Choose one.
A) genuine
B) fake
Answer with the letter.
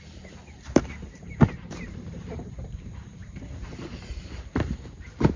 B